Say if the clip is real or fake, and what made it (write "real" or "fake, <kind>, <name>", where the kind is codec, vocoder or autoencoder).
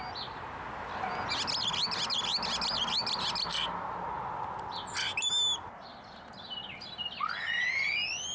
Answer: real